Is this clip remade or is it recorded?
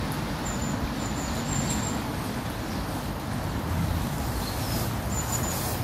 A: recorded